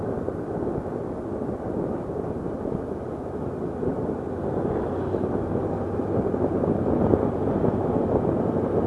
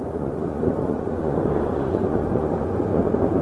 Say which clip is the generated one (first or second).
second